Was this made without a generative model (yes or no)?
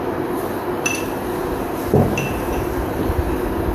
yes